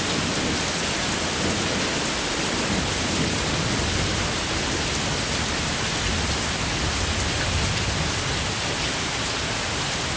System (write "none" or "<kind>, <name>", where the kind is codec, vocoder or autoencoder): none